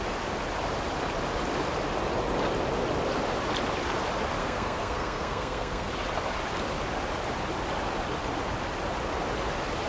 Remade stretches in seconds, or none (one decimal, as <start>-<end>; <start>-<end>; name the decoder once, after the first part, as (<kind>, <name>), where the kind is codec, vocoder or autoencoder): 4.4-5.9 (codec, SNAC)